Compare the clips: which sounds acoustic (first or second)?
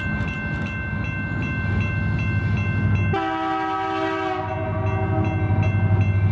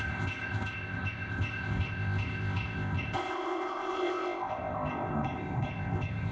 first